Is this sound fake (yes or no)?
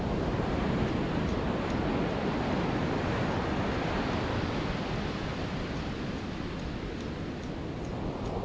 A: no